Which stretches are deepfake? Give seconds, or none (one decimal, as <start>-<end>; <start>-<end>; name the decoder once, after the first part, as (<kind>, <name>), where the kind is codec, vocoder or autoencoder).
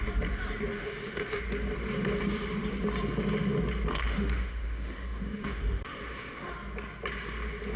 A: 0.7-1.4 (autoencoder, DAC-VAE); 3.9-6.5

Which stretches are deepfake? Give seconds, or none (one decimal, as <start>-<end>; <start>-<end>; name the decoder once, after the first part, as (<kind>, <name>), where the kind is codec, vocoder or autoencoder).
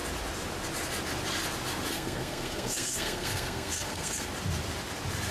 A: 1.9-4.3 (codec, SNAC)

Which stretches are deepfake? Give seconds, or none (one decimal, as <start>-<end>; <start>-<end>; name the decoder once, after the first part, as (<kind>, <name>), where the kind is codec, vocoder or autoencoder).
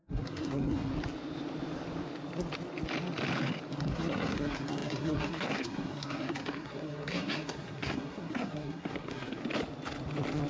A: 0.0-0.9 (codec, SNAC); 3.7-9.4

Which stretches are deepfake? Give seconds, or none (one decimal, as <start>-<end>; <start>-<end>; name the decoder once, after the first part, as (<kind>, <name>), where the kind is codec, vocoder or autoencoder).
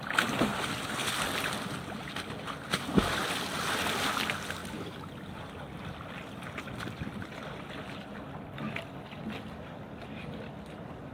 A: none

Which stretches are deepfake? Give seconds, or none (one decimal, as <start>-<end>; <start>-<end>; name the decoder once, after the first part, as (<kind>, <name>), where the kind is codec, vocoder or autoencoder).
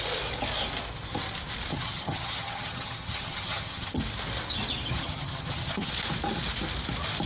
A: 1.7-4.0 (vocoder, HiFi-GAN); 4.9-5.9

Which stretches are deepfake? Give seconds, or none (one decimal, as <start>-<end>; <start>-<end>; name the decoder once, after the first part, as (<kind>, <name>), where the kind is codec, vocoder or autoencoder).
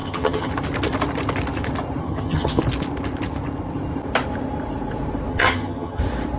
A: 0.0-0.5 (vocoder, HiFi-GAN); 2.0-2.6; 5.3-6.0